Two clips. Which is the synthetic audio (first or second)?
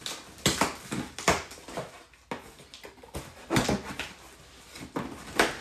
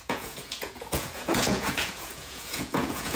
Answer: second